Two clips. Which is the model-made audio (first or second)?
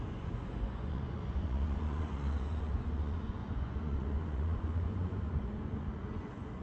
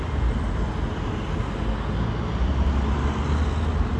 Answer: first